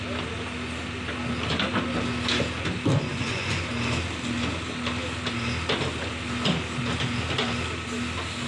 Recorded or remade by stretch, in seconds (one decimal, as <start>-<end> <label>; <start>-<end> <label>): 0.0-3.1 recorded; 3.1-3.7 remade; 3.7-8.5 recorded